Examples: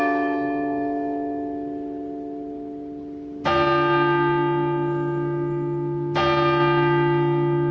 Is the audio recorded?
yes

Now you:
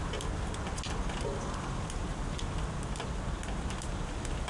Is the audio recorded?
yes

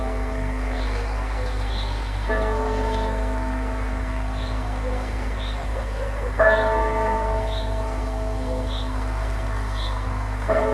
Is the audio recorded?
no